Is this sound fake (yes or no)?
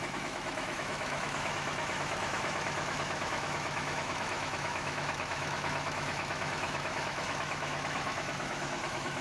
yes